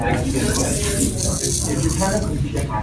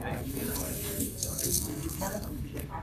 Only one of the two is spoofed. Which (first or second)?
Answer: second